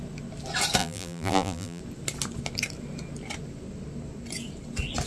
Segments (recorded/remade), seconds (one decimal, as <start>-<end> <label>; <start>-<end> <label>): 0.0-0.8 recorded; 0.8-1.8 remade; 1.8-5.1 recorded